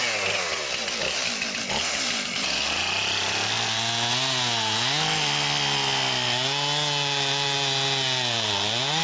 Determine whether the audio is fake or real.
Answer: real